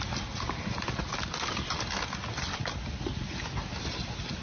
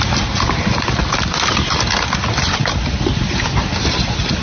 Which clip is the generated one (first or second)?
second